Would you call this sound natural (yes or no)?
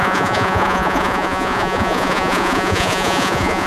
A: no